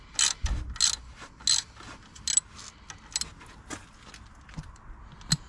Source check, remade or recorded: recorded